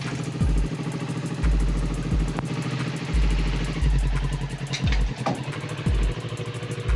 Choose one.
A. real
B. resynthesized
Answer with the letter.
A